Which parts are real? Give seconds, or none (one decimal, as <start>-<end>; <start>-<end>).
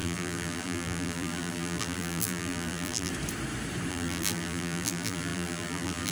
3.1-3.9